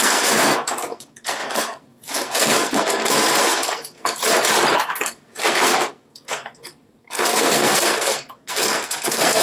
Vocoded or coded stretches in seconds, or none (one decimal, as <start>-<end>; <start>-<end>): 0.0-4.2; 4.7-9.4